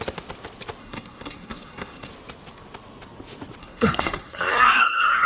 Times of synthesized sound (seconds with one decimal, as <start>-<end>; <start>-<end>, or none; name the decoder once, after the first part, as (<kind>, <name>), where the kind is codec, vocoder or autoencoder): 0.8-2.1 (codec, SNAC); 3.6-5.3